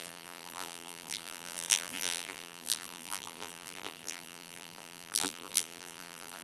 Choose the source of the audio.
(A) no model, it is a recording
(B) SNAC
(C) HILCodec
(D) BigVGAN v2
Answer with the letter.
D